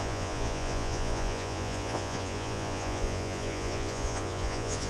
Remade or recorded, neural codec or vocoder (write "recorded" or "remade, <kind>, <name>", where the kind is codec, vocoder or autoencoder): remade, vocoder, Vocos